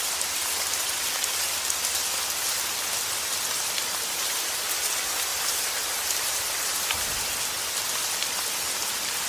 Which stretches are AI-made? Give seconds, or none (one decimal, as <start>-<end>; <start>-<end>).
5.3-7.4